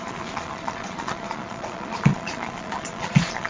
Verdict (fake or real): fake